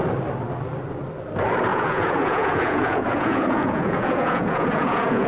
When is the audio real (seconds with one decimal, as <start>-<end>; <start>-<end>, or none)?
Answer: 0.0-1.7